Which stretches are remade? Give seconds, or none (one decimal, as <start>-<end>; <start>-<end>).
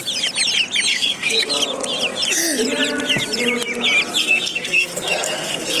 0.9-1.5; 4.2-5.8